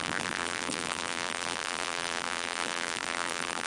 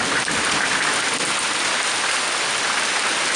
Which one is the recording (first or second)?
second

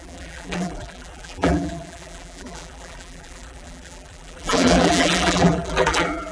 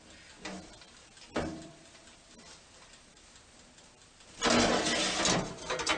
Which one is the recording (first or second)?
second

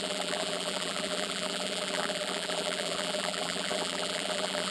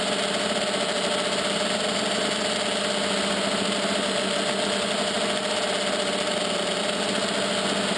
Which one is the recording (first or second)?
second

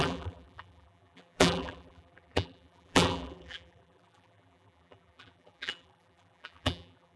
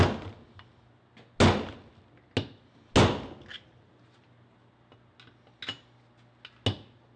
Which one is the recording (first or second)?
second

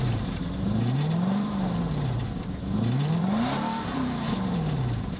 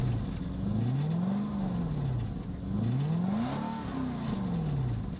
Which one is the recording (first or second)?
second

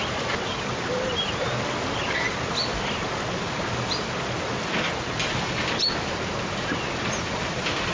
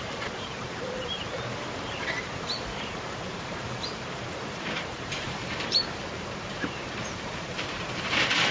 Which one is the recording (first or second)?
first